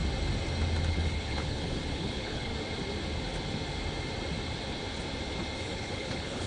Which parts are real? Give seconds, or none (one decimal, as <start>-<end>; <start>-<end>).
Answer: 0.0-0.9; 2.5-5.6